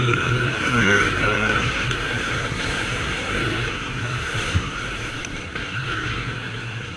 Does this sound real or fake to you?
fake